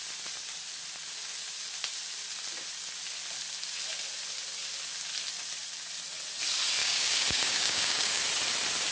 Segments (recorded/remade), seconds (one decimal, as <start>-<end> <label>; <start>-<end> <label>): 0.0-6.8 recorded; 6.8-8.2 remade; 8.2-8.9 recorded